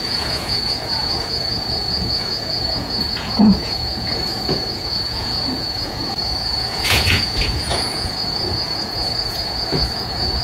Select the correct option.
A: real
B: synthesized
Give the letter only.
B